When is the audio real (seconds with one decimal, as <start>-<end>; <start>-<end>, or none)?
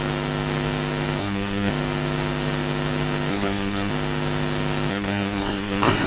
0.0-1.2; 1.7-3.3; 3.9-4.9